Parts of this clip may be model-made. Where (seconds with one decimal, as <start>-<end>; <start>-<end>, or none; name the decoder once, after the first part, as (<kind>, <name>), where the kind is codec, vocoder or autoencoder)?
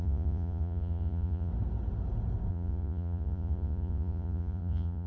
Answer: 0.0-1.5 (vocoder, Vocos); 2.5-5.1